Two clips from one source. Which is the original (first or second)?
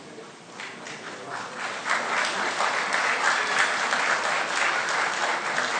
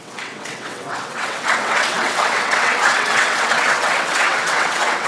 first